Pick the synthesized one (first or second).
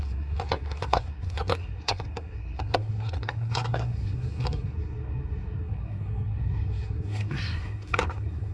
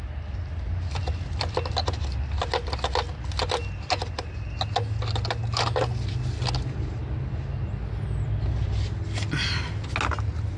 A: first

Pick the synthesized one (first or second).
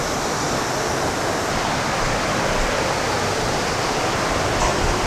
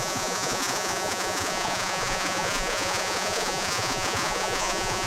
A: second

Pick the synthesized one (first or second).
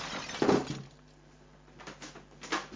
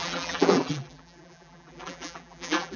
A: second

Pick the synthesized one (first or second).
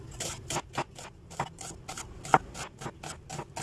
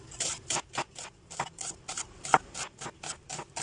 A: second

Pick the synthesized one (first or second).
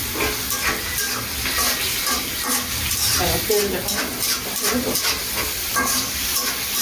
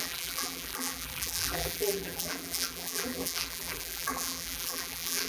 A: second